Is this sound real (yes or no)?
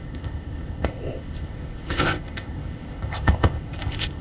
no